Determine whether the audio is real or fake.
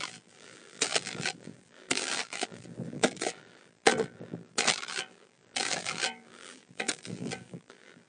fake